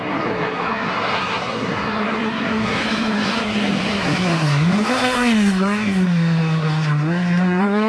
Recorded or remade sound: remade